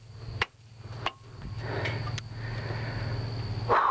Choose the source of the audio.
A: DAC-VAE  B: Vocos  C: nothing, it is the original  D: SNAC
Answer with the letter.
C